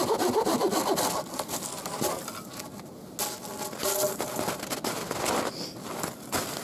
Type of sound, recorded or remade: recorded